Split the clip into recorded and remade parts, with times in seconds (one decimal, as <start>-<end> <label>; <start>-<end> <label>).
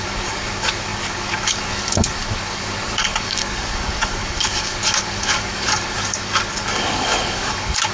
0.0-7.9 remade